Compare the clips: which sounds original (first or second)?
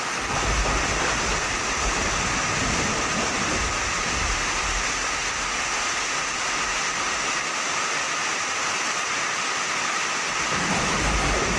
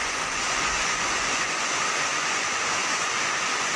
first